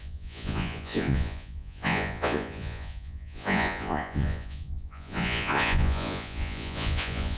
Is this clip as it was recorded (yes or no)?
no